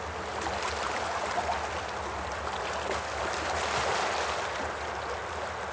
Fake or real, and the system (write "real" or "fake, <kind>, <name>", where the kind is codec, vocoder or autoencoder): real